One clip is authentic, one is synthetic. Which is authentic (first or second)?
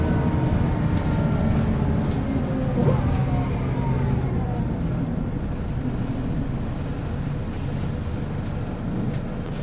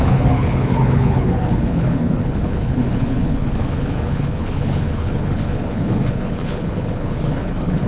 first